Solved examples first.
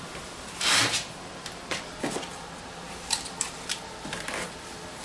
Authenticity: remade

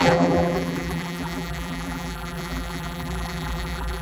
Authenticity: remade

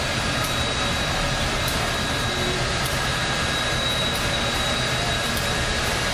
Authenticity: remade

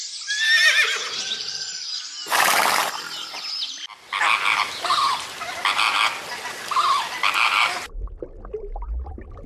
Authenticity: recorded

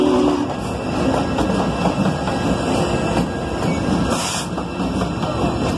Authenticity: recorded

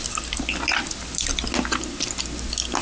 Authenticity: recorded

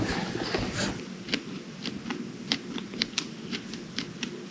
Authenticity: remade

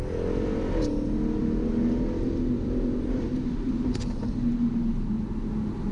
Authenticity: recorded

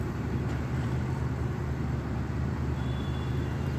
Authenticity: remade